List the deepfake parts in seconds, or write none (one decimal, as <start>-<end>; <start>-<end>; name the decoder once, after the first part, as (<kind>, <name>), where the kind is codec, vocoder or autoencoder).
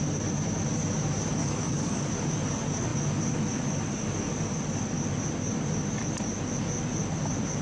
1.4-2.1 (codec, DAC)